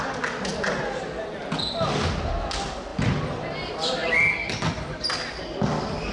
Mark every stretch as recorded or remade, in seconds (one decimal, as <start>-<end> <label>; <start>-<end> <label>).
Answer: 0.0-6.1 recorded